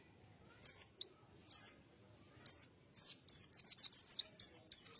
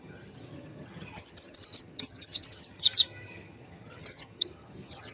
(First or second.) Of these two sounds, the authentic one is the first